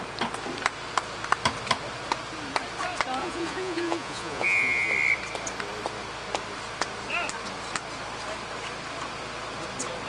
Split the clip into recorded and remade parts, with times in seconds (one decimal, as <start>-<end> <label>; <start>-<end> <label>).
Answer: 0.0-3.2 recorded; 3.2-4.9 remade; 4.9-10.1 recorded

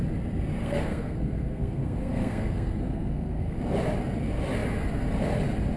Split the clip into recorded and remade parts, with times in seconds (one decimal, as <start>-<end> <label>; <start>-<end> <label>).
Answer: 0.0-0.6 recorded; 0.6-3.6 remade; 3.6-5.8 recorded

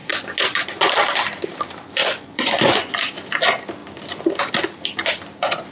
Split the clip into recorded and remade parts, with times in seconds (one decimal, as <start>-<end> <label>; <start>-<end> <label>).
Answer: 0.0-0.9 remade; 0.9-2.0 recorded; 2.0-2.9 remade; 2.9-5.7 recorded

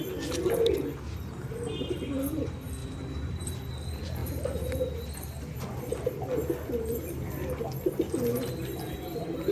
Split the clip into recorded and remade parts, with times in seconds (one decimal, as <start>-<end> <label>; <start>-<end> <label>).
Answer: 0.0-2.8 recorded; 2.8-3.3 remade; 3.3-9.5 recorded

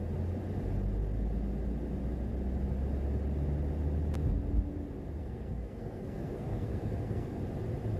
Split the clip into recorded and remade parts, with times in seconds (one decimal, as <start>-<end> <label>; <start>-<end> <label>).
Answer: 0.0-5.2 recorded; 5.2-7.4 remade; 7.4-8.0 recorded

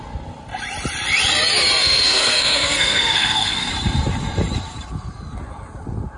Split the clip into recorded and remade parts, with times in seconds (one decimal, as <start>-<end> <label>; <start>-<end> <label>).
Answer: 0.0-1.8 recorded; 1.8-3.7 remade; 3.7-6.2 recorded

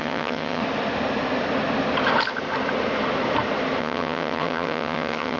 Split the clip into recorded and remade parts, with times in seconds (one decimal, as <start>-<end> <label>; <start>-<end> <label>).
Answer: 0.0-0.6 remade; 0.6-3.8 recorded; 3.8-5.4 remade

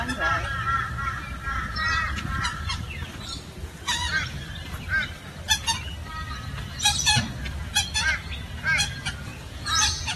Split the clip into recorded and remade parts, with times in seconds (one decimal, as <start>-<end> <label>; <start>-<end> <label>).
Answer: 0.0-3.6 recorded; 3.6-4.4 remade; 4.4-9.3 recorded; 9.3-10.2 remade